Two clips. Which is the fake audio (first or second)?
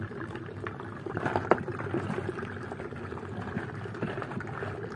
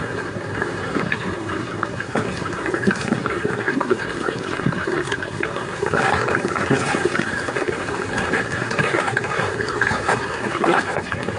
second